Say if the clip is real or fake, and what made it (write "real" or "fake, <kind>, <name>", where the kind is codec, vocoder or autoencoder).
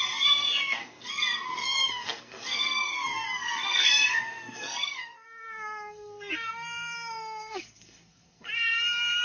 fake, codec, SNAC